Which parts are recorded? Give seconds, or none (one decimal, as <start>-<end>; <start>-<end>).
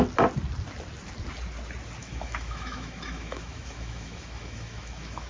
0.0-2.0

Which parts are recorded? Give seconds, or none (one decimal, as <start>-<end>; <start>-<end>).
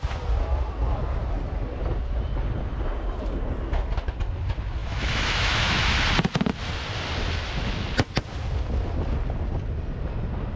0.0-4.8; 6.0-10.6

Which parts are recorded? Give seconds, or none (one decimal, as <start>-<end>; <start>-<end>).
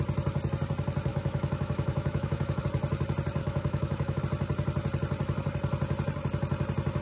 0.0-1.1; 2.6-3.4; 4.2-7.0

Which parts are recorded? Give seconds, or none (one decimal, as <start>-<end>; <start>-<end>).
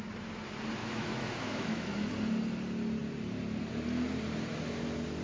0.0-0.8; 1.9-5.2